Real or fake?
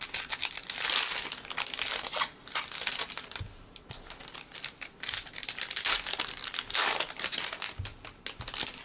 real